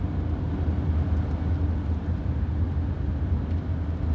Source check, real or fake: real